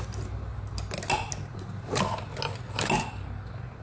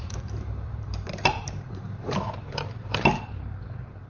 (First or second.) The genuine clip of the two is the first